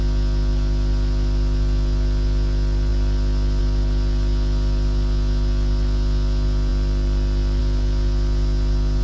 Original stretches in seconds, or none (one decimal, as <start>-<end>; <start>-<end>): 0.0-9.0